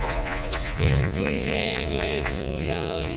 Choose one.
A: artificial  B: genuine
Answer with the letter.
A